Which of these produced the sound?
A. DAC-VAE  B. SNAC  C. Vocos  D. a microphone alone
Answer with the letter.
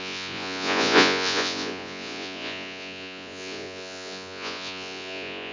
C